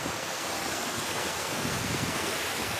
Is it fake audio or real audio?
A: fake